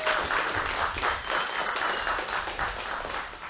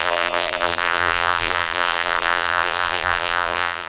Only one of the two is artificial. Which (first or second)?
second